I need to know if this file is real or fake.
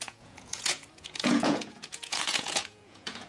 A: fake